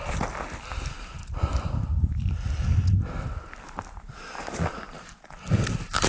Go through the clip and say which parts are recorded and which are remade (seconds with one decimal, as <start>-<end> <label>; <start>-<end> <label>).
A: 0.0-6.1 recorded